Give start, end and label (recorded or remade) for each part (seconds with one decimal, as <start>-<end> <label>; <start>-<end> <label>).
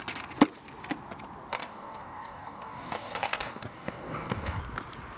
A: 0.0-1.5 recorded; 1.5-4.6 remade; 4.6-5.2 recorded